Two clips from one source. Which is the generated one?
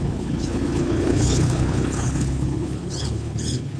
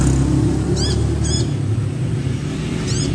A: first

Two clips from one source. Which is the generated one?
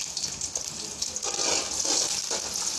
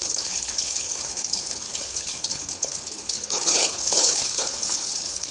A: second